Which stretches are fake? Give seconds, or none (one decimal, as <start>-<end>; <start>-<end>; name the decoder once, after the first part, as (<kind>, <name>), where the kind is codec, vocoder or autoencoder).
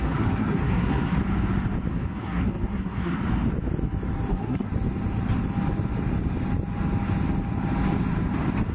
0.0-1.2 (codec, SNAC); 1.9-3.2; 4.3-4.7